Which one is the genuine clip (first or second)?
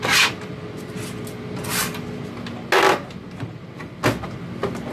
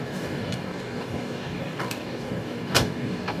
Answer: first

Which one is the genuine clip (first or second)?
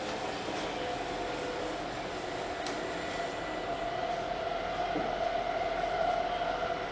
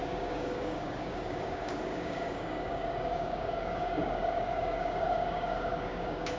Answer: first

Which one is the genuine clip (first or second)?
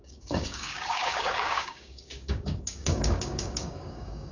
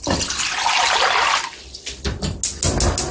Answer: second